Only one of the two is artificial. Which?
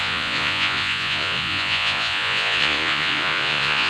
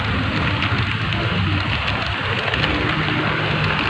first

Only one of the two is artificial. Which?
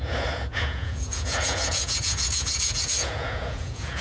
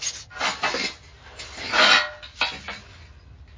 first